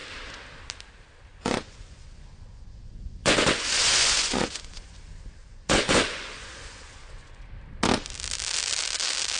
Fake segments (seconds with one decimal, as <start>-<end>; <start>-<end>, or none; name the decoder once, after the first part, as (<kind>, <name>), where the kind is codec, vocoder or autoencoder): 1.3-5.0 (vocoder, Vocos); 5.4-7.4